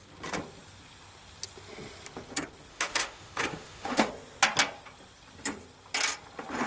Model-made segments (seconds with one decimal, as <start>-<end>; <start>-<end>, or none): 2.7-4.1